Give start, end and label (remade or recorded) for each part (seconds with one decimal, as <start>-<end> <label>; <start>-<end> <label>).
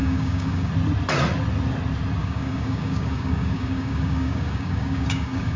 0.0-0.7 remade; 0.7-2.2 recorded; 2.2-5.6 remade